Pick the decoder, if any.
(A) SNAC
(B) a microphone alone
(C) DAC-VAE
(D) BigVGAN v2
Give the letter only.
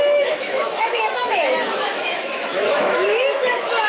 C